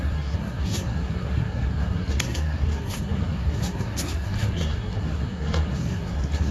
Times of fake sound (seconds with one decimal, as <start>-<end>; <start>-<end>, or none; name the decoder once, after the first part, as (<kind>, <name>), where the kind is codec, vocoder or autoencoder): 0.0-6.5 (codec, SNAC)